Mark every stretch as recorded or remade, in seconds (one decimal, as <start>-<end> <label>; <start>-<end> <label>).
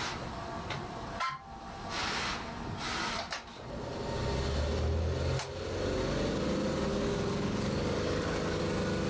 0.0-6.9 recorded; 6.9-8.6 remade; 8.6-9.1 recorded